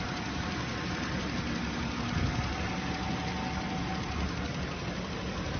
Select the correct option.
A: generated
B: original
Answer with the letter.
B